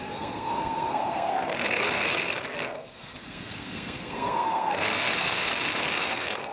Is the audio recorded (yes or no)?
no